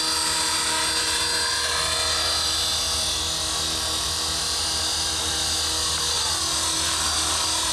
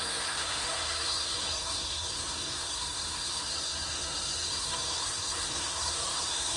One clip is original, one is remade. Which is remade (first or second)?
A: second